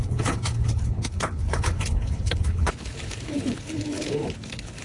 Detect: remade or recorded remade